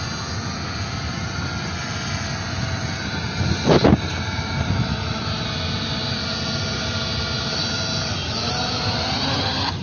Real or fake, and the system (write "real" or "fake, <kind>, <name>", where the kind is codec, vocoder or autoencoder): real